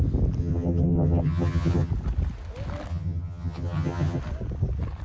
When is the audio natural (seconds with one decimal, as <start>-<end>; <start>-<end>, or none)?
0.0-0.4; 1.9-2.9; 4.2-5.0